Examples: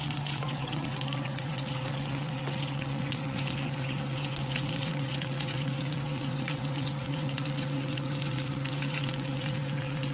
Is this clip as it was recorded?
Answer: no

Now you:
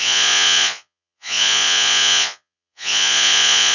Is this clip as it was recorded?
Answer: no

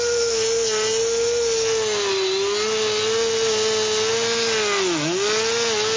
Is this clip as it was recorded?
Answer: yes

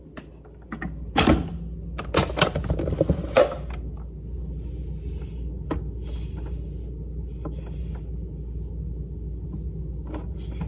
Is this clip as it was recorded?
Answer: yes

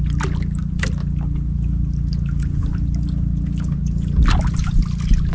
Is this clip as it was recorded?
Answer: yes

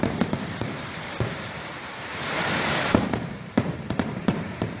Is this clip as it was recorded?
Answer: no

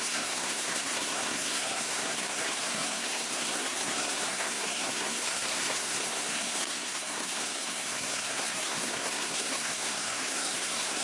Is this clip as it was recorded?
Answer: no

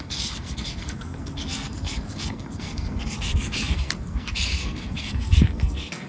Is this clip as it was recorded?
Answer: no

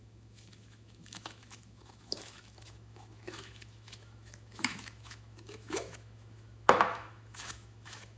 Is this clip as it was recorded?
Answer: no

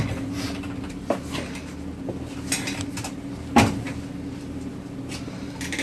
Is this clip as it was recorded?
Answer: yes